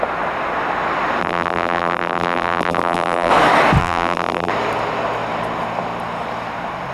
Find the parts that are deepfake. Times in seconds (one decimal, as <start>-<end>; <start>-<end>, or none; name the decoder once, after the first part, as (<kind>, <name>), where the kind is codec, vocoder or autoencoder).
1.2-3.3 (vocoder, BigVGAN v2); 3.8-4.5